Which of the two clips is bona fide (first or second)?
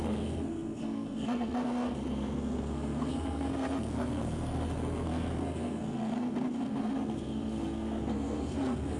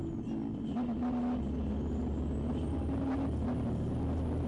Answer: second